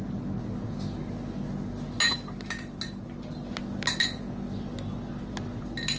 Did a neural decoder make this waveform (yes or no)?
no